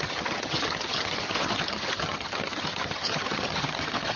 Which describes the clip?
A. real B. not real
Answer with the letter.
B